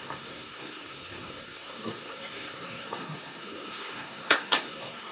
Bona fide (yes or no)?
no